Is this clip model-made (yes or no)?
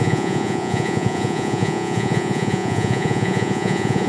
yes